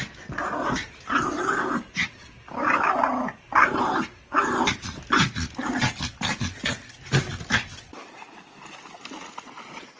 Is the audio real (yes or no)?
yes